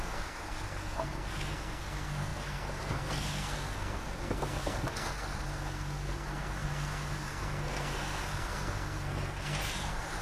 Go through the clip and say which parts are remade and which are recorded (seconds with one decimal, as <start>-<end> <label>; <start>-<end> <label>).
0.0-10.2 remade